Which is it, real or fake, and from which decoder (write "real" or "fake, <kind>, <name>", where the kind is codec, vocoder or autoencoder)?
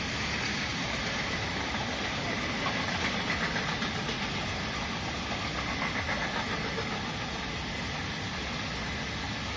real